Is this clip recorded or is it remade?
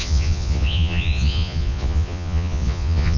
remade